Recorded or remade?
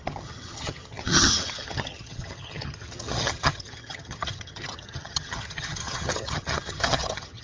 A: remade